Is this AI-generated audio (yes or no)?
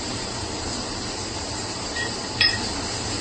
yes